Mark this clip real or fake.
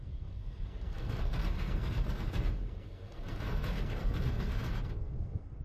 fake